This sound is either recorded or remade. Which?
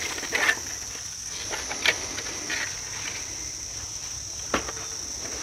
recorded